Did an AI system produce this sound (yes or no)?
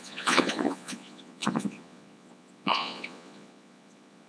yes